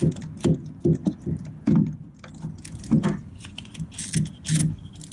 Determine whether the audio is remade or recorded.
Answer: recorded